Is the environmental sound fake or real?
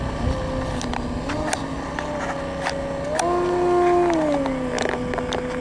real